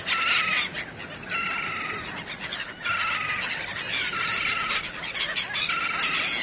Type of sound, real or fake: real